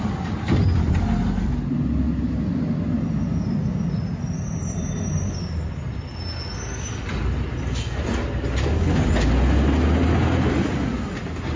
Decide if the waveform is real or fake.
real